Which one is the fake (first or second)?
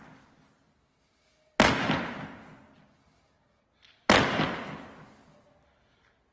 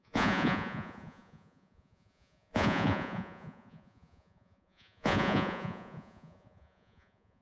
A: second